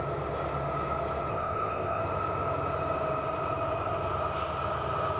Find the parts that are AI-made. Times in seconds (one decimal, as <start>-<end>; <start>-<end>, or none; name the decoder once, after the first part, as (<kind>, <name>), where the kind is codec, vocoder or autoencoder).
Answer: 1.3-2.0 (codec, ZipCodec)